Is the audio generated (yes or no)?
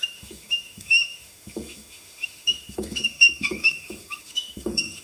yes